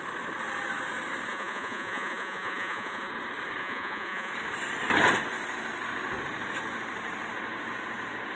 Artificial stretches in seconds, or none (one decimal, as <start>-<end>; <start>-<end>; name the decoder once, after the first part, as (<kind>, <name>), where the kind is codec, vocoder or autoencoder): 1.3-3.1 (vocoder, Vocos); 3.6-4.3